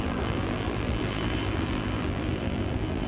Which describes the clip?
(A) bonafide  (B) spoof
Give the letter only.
B